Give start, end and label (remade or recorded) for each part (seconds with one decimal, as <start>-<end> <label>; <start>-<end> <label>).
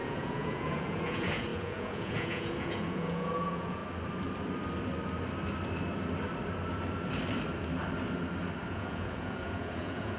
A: 0.0-3.8 remade; 3.8-8.7 recorded; 8.7-10.2 remade